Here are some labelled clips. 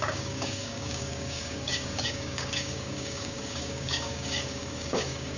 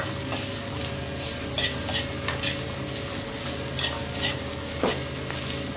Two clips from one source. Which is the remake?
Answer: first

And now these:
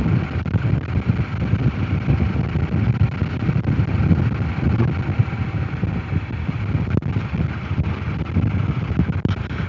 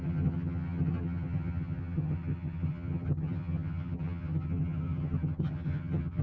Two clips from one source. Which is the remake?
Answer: second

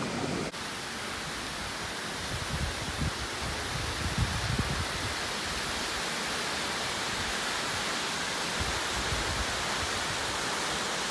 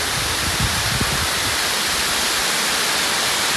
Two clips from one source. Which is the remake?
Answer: second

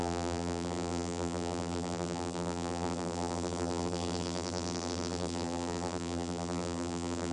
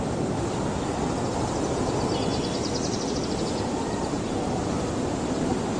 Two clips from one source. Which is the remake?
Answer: first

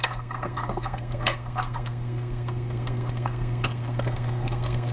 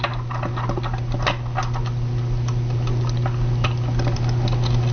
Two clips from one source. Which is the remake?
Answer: first